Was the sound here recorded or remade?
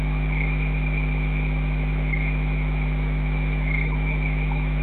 remade